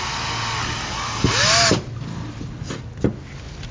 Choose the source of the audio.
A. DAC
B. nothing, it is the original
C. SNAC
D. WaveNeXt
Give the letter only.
B